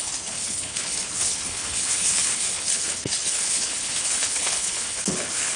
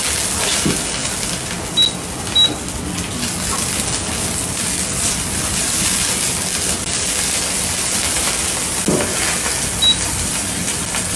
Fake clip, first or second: first